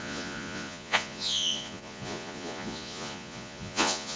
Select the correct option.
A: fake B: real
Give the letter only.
A